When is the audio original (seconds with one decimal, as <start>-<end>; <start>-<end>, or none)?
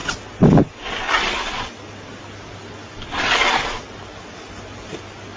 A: 0.0-5.4